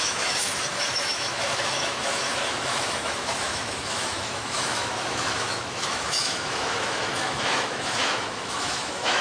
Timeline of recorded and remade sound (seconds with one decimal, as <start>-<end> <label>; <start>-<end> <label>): 0.0-9.2 remade